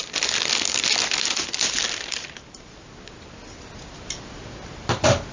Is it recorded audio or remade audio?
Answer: recorded